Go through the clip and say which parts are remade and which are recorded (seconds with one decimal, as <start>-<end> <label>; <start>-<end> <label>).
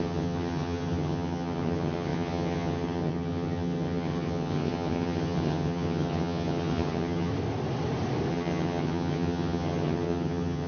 0.0-7.3 remade; 7.3-8.3 recorded; 8.3-10.7 remade